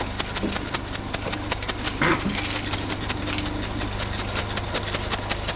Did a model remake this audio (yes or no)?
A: no